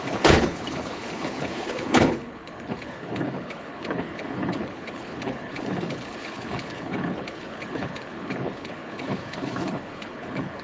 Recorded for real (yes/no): no